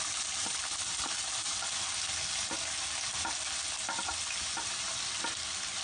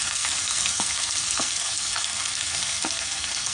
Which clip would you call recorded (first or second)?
first